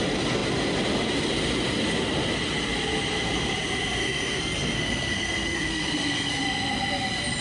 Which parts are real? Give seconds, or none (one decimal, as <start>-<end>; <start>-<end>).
0.0-4.0; 6.4-7.4